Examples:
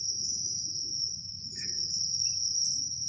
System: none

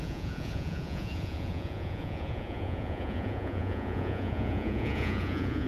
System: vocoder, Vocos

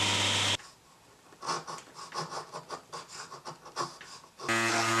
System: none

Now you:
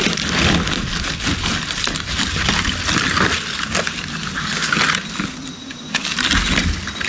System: none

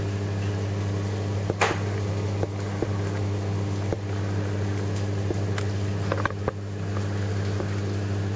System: none